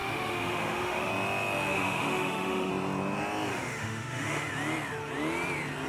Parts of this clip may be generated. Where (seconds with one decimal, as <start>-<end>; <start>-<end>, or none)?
0.0-1.1; 1.7-2.7; 3.5-4.5